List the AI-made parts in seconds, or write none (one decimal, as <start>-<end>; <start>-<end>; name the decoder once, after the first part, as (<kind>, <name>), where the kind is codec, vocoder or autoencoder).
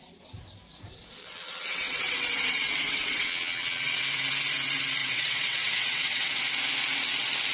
1.2-4.0 (vocoder, WaveNeXt); 5.0-6.4